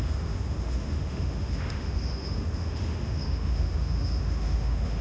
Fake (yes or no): yes